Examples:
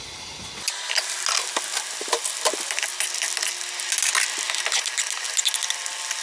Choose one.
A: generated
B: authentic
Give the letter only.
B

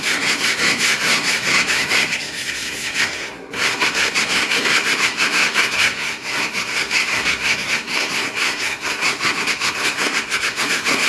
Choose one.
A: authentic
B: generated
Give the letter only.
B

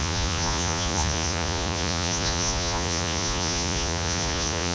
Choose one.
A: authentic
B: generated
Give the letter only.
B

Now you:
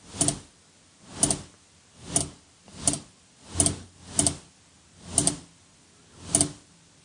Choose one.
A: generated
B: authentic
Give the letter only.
B